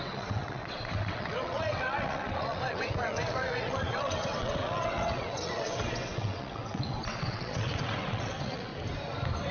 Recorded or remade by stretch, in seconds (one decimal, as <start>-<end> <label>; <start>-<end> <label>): 0.0-8.7 remade; 8.7-9.5 recorded